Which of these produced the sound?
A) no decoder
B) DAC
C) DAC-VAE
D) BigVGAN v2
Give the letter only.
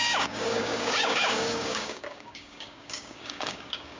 B